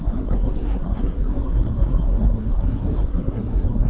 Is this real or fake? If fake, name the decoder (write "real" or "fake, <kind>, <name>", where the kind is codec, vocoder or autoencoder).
fake, codec, SNAC